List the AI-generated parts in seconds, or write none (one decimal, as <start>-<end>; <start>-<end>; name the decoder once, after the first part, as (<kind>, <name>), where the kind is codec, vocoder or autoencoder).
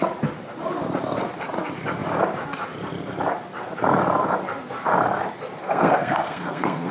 5.6-6.9 (codec, SNAC)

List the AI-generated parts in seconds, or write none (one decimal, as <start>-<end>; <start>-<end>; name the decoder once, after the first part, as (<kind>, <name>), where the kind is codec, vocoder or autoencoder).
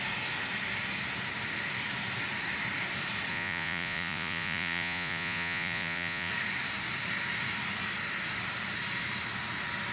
3.3-6.3 (vocoder, Vocos)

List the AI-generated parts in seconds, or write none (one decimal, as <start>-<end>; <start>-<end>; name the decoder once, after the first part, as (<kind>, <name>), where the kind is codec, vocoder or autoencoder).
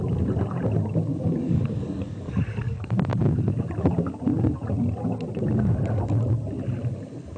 1.1-2.9 (codec, DAC)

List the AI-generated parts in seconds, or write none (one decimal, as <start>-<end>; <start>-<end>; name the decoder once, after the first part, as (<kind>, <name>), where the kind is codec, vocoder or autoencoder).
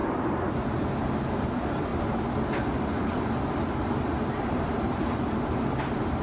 0.0-1.9 (vocoder, BigVGAN v2); 3.8-6.2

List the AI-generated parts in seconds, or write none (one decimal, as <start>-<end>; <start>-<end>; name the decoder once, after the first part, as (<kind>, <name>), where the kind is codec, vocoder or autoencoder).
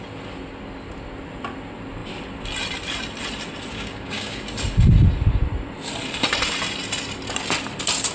3.7-4.4 (codec, DAC)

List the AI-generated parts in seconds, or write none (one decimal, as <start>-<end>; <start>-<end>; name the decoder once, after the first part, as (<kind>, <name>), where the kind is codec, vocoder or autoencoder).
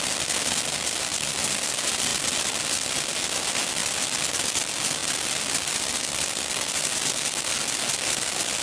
none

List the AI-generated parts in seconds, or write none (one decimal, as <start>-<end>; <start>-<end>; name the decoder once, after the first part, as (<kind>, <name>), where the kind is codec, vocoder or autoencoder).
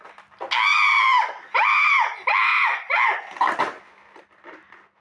none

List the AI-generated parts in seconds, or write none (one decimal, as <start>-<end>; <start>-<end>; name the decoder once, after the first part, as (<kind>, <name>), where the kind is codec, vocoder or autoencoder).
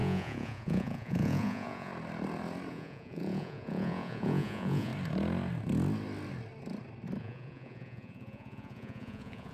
0.0-1.9 (vocoder, Vocos); 2.7-4.9; 7.2-9.5